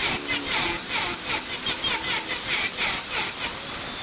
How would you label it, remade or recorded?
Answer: recorded